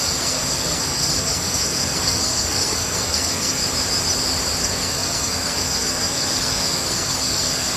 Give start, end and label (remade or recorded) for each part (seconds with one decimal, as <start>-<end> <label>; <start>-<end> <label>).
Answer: 0.0-3.6 remade; 3.6-4.6 recorded; 4.6-7.8 remade